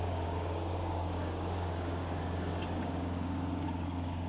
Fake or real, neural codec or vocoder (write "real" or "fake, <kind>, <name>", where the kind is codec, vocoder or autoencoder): fake, codec, DAC